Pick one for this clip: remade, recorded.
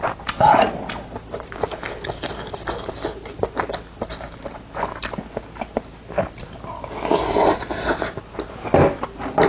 recorded